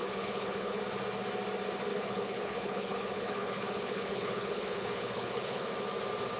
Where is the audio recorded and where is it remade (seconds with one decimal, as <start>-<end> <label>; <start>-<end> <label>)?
0.0-0.8 remade; 0.8-1.9 recorded; 1.9-5.7 remade; 5.7-6.4 recorded